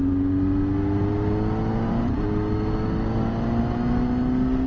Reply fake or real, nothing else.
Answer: real